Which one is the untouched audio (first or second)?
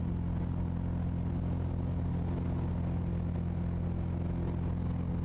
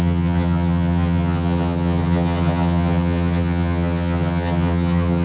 first